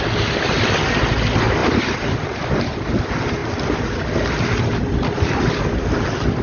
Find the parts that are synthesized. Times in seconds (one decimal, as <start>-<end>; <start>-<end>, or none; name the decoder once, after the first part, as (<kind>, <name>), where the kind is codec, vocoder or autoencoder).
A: 1.6-2.6 (vocoder, BigVGAN v2); 3.4-5.6